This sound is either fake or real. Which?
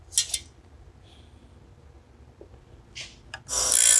real